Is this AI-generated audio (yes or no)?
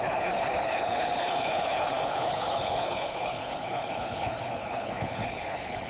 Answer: yes